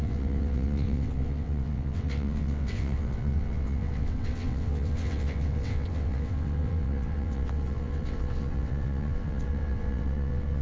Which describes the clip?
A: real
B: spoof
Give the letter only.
B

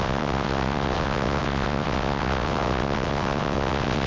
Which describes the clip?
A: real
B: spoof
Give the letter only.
B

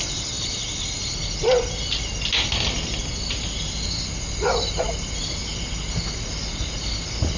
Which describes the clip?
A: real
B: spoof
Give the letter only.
A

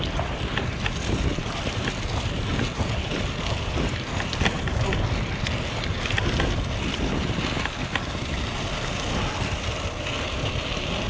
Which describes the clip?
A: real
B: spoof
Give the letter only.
A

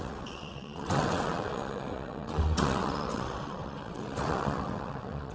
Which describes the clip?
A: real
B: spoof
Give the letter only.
B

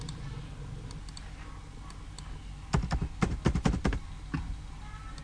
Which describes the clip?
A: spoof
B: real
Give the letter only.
B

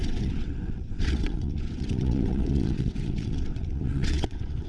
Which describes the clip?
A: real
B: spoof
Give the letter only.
B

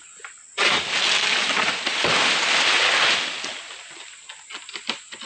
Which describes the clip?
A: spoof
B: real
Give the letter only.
B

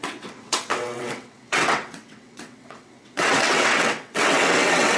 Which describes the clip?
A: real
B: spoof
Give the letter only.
B